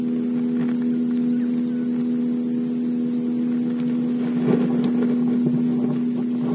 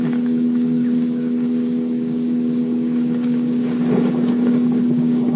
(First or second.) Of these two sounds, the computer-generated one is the second